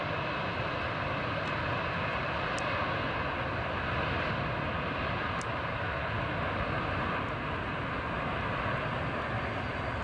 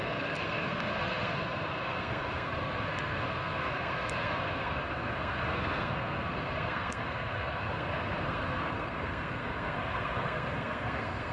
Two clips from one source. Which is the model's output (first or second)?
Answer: second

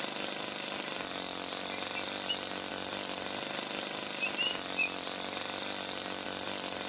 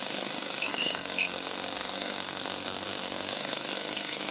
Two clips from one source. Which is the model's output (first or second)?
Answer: second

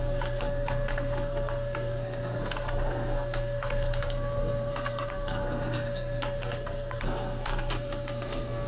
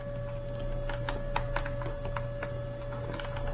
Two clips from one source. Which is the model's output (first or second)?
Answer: first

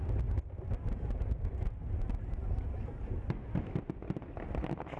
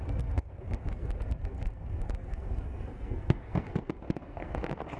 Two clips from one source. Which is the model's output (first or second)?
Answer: second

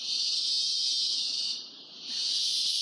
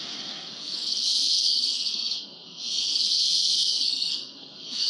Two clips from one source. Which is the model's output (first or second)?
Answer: second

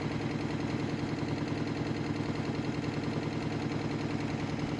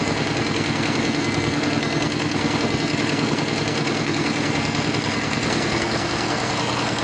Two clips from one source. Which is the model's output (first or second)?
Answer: second